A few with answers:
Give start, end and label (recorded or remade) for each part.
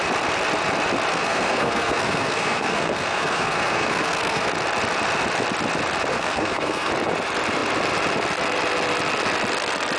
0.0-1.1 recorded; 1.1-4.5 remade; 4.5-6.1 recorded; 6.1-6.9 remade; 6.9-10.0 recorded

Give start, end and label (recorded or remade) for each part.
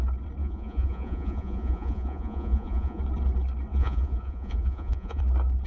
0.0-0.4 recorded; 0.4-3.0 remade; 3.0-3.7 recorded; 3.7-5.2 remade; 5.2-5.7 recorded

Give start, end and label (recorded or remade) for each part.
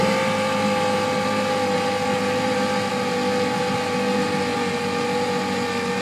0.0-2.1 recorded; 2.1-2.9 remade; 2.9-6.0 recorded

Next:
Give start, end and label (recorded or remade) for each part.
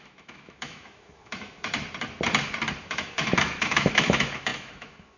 0.0-1.7 remade; 1.7-2.8 recorded; 2.8-5.2 remade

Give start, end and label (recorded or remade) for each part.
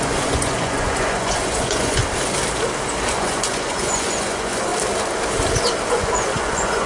0.0-2.0 remade; 2.0-3.1 recorded; 3.1-4.7 remade; 4.7-5.9 recorded; 5.9-6.9 remade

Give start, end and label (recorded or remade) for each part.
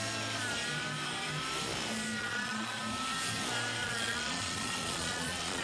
0.0-2.2 recorded; 2.2-2.8 remade; 2.8-3.8 recorded; 3.8-5.6 remade